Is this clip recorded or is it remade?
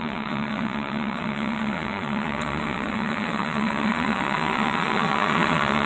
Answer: remade